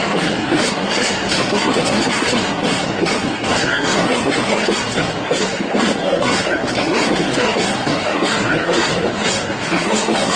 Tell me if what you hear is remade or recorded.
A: remade